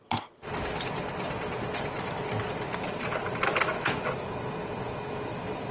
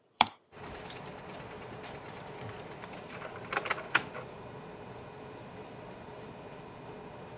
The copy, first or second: second